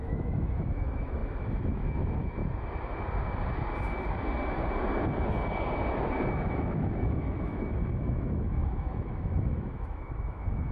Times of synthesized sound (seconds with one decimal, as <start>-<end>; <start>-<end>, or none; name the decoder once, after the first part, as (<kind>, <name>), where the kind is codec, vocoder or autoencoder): 0.0-2.4 (autoencoder, DAC-VAE); 6.3-10.7